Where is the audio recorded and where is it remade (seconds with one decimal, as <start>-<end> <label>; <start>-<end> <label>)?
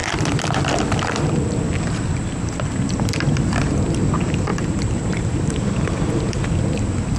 0.0-4.5 recorded; 4.5-6.6 remade; 6.6-7.2 recorded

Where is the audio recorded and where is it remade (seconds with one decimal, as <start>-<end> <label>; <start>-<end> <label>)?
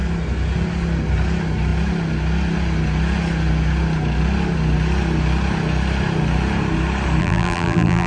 0.0-7.2 recorded; 7.2-8.1 remade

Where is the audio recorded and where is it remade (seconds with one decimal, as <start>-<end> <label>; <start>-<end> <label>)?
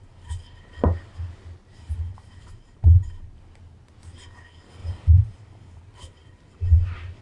0.0-2.1 recorded; 2.1-3.4 remade; 3.4-4.8 recorded; 4.8-5.8 remade; 5.8-6.2 recorded; 6.2-7.2 remade